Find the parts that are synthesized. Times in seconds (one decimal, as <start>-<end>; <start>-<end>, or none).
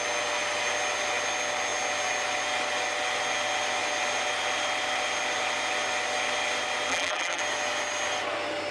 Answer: 6.9-7.4